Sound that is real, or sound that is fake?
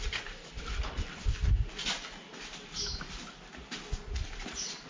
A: real